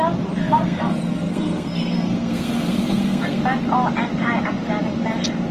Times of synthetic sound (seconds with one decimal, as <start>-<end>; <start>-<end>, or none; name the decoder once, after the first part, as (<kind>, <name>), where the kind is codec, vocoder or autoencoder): 0.4-3.4 (codec, SNAC)